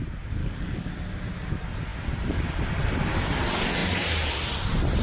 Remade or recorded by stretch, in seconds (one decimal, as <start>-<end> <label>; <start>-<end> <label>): 0.0-0.4 recorded; 0.4-0.9 remade; 0.9-5.0 recorded